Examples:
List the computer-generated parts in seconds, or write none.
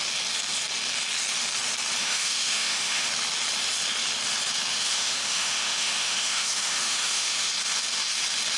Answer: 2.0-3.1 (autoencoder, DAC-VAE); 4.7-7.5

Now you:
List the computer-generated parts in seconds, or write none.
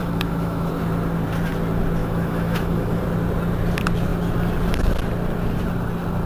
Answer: 0.0-0.7 (autoencoder, DAC-VAE); 2.0-3.0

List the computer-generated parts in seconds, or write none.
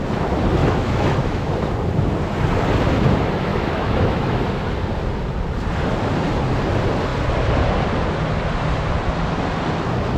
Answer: 0.6-1.5 (autoencoder, DAC-VAE); 3.5-4.4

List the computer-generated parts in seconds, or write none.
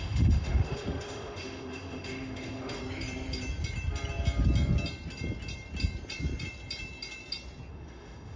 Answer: 0.0-2.8 (autoencoder, DAC-VAE); 7.7-8.4